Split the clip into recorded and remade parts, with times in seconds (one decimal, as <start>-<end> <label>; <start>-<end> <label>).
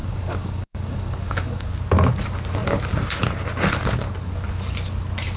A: 0.0-1.7 remade; 1.7-5.4 recorded